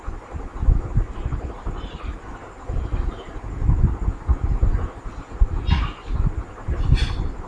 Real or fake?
real